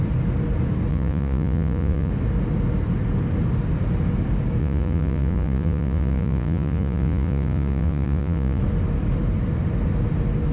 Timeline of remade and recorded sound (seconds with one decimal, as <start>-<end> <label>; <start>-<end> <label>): 0.0-0.9 recorded; 0.9-2.1 remade; 2.1-4.6 recorded; 4.6-8.6 remade; 8.6-10.5 recorded